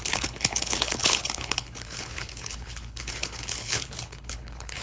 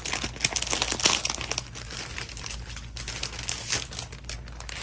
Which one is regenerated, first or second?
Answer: first